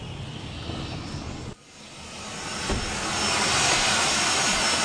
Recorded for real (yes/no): yes